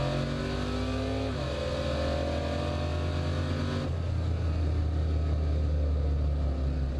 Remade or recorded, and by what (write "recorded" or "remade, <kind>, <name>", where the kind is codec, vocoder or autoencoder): recorded